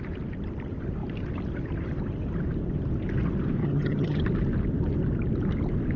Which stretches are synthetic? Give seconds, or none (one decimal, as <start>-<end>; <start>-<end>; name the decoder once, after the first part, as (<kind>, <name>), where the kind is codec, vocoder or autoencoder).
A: 3.6-4.2 (vocoder, HiFi-GAN)